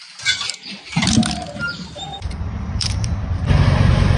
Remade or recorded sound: remade